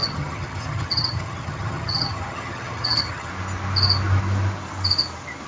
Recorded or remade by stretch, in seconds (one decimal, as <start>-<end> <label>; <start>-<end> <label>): 0.0-3.3 remade; 3.3-5.5 recorded